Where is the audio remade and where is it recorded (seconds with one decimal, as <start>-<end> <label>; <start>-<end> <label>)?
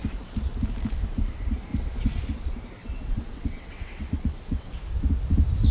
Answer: 0.0-2.8 recorded; 2.8-4.7 remade; 4.7-5.7 recorded